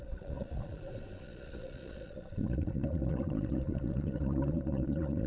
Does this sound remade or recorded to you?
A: remade